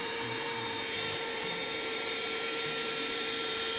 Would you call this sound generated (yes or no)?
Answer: yes